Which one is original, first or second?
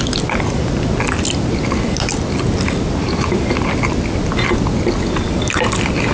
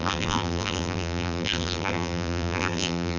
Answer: first